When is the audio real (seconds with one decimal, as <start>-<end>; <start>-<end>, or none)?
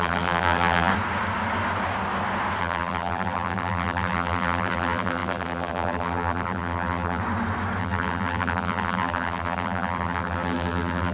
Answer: 0.9-2.6; 7.2-7.8